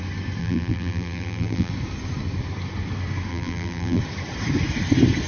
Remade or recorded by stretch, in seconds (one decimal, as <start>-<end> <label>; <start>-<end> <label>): 0.0-0.4 recorded; 0.4-1.7 remade; 1.7-3.3 recorded; 3.3-4.0 remade; 4.0-5.3 recorded

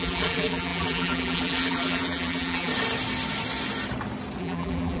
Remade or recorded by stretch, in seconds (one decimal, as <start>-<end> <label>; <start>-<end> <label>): 0.0-2.7 remade; 2.7-4.4 recorded; 4.4-5.0 remade

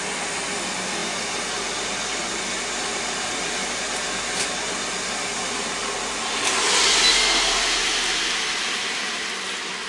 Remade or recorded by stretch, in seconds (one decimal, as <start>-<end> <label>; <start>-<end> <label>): 0.0-9.9 recorded

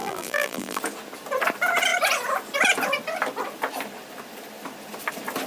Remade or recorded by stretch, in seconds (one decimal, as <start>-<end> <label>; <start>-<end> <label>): 0.0-0.8 remade; 0.8-5.5 recorded

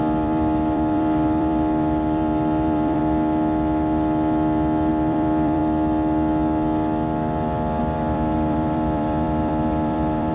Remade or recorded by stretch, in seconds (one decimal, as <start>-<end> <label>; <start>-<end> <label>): 0.0-3.0 remade; 3.0-4.9 recorded; 4.9-5.6 remade; 5.6-7.8 recorded; 7.8-10.3 remade

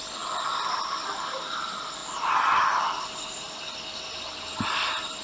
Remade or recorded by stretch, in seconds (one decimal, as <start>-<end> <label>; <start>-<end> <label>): 0.0-2.0 remade; 2.0-2.8 recorded; 2.8-5.2 remade